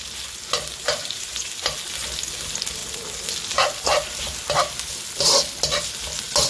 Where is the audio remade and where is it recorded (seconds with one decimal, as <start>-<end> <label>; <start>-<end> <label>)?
0.0-1.0 recorded; 1.0-1.5 remade; 1.5-6.5 recorded